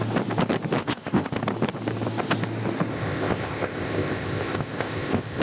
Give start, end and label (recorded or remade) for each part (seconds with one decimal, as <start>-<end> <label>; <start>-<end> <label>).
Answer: 0.0-0.8 recorded; 0.8-1.4 remade; 1.4-2.9 recorded; 2.9-5.4 remade